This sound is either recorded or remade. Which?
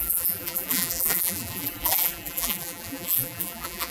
remade